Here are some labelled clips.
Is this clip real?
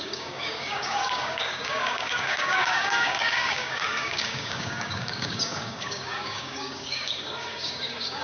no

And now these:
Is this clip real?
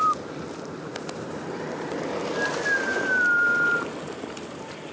yes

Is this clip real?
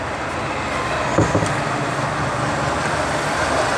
no